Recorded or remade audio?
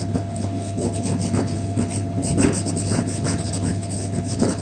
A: remade